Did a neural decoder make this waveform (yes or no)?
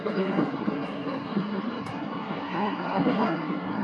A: yes